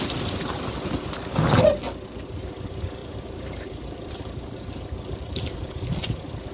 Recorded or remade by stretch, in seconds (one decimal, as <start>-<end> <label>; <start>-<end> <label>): 0.0-3.0 recorded; 3.0-5.6 remade; 5.6-6.5 recorded

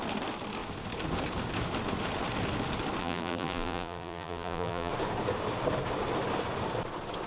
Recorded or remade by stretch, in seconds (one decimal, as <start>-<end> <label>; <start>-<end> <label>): 0.0-3.0 recorded; 3.0-4.9 remade; 4.9-7.3 recorded

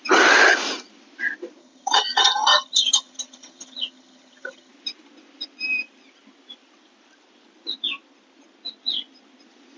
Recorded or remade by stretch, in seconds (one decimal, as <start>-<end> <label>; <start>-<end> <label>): 0.0-1.6 recorded; 1.6-4.7 remade; 4.7-9.8 recorded

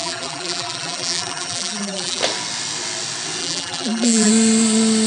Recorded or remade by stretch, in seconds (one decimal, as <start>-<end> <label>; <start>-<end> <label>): 0.0-2.2 remade; 2.2-3.4 recorded; 3.4-4.3 remade; 4.3-5.1 recorded

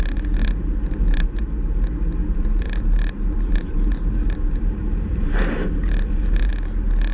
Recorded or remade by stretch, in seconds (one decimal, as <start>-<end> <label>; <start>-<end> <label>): 0.0-0.4 recorded; 0.4-1.4 remade; 1.4-2.2 recorded; 2.2-6.5 remade; 6.5-7.1 recorded